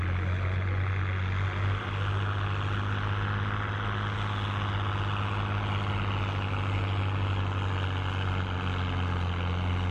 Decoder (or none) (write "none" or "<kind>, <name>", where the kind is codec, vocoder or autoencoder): none